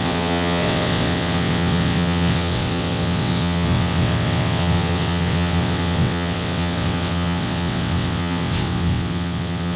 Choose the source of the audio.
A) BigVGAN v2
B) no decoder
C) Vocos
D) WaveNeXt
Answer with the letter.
D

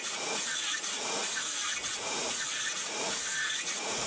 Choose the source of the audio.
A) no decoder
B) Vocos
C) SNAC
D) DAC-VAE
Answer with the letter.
B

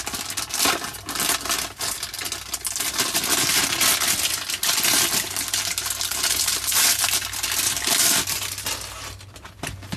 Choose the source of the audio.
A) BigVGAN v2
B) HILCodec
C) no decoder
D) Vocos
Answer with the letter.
C